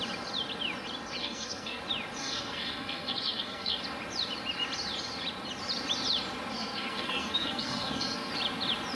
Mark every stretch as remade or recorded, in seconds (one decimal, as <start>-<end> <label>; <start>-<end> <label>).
0.0-1.2 recorded; 1.2-1.8 remade; 1.8-2.2 recorded; 2.2-3.8 remade; 3.8-6.5 recorded; 6.5-8.3 remade; 8.3-8.9 recorded